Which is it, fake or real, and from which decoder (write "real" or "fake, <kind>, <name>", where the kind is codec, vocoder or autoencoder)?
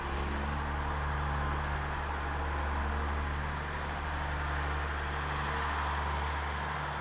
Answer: real